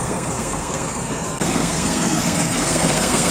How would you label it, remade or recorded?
remade